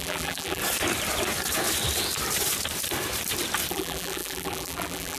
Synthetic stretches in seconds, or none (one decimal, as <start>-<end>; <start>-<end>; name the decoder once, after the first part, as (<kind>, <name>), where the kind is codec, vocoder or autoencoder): 0.0-0.6 (vocoder, BigVGAN v2); 3.7-5.2